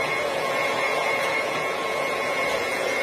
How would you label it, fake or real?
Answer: fake